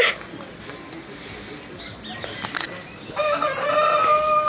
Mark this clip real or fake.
real